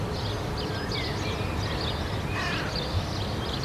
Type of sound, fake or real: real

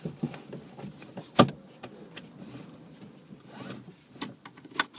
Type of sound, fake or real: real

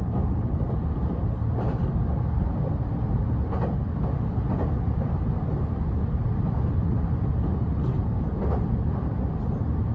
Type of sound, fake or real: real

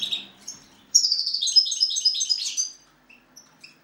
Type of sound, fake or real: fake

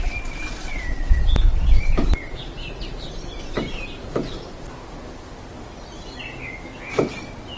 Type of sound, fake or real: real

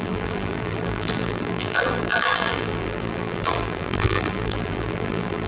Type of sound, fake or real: fake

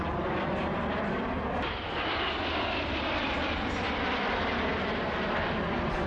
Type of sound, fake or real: real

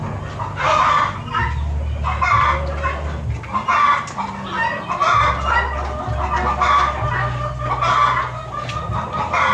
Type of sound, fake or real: real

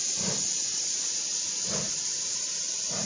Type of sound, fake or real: fake